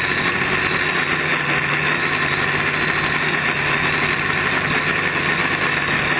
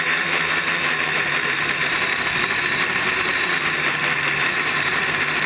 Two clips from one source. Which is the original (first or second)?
first